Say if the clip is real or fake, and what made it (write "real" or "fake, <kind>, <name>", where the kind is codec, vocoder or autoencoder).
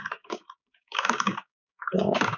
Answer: fake, codec, DAC